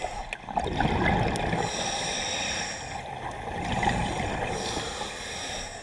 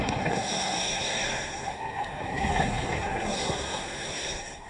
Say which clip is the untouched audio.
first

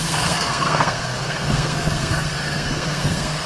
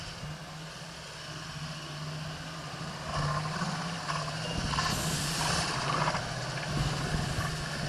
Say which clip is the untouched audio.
second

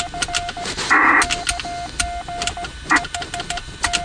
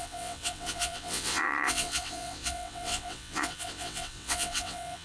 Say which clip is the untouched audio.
first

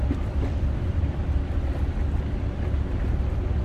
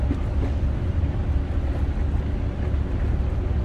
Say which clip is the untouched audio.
second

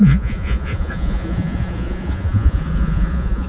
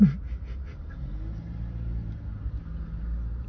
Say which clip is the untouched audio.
second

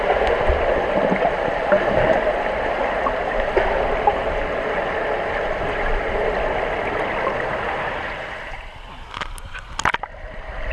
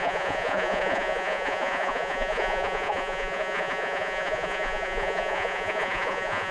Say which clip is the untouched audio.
first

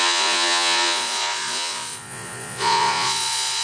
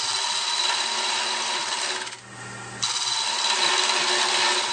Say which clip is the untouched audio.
second